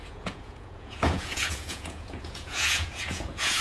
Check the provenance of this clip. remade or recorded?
remade